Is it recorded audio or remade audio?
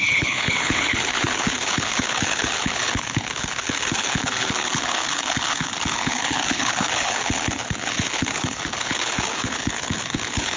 remade